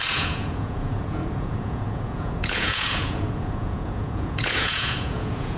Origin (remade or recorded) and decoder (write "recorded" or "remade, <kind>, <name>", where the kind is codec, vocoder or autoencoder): remade, vocoder, Vocos